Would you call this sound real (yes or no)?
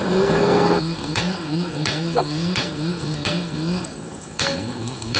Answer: no